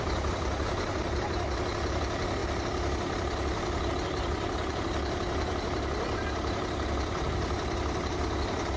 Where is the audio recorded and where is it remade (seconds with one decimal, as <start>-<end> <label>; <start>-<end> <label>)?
0.0-8.8 remade